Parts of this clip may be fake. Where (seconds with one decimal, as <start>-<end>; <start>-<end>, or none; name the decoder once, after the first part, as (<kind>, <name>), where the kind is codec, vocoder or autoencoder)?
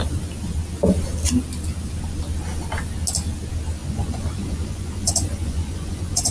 3.8-6.3 (vocoder, Vocos)